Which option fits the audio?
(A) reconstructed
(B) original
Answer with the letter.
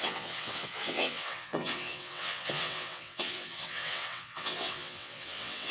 A